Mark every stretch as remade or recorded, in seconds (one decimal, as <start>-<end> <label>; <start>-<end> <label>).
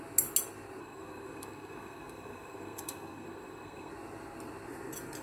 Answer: 0.0-0.8 recorded; 0.8-3.9 remade; 3.9-5.2 recorded